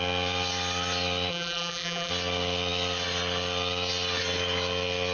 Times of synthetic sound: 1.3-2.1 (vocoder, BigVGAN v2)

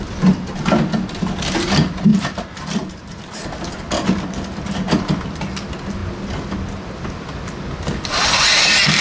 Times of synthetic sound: 2.1-3.4 (vocoder, BigVGAN v2)

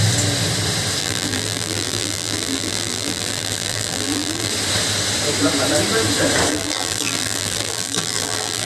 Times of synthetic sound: 1.0-4.5 (vocoder, BigVGAN v2); 6.5-8.7